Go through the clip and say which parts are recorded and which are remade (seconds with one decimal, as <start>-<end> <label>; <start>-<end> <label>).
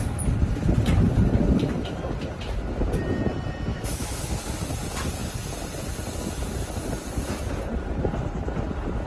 0.0-3.7 recorded; 3.7-4.3 remade; 4.3-9.1 recorded